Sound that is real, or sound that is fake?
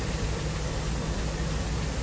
real